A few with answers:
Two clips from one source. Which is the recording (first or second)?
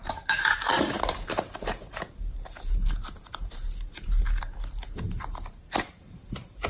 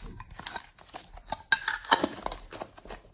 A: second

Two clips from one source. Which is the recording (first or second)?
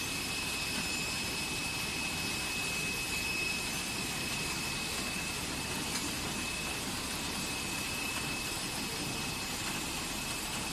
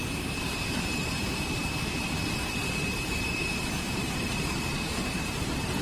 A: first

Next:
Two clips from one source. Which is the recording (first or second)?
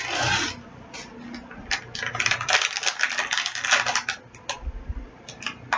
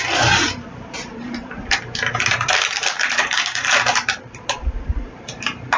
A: first